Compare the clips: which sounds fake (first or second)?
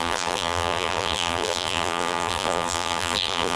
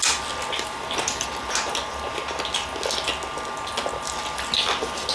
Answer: first